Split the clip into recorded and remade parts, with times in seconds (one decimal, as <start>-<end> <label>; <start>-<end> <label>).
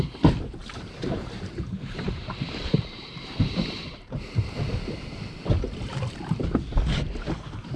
0.0-0.6 recorded; 0.6-4.2 remade; 4.2-7.8 recorded